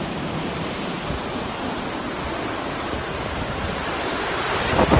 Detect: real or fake real